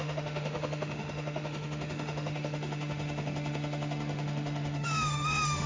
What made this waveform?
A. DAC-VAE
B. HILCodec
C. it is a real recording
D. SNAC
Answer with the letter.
A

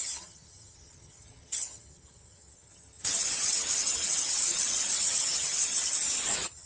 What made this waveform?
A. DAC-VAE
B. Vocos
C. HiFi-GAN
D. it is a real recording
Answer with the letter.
C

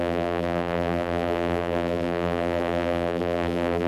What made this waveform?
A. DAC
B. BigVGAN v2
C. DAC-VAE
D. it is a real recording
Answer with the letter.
B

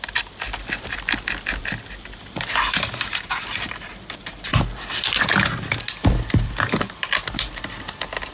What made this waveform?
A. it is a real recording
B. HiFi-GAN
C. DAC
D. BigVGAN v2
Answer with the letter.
D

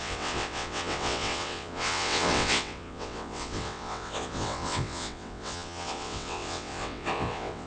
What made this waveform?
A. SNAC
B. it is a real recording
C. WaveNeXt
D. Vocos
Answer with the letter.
C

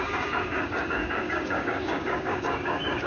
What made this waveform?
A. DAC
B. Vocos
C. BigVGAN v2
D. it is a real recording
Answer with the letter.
A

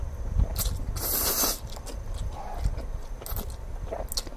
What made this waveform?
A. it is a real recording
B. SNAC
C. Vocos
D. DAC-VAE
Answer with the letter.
A